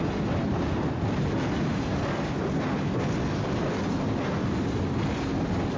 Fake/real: real